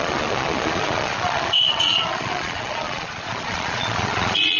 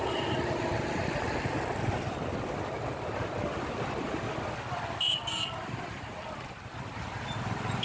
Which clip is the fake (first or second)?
first